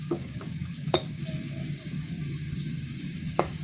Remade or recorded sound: remade